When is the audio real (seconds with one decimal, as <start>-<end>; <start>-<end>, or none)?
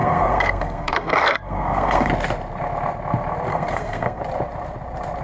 2.1-3.5; 4.2-5.2